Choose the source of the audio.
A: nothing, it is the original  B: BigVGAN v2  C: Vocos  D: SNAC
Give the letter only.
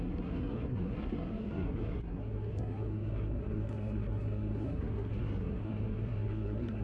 D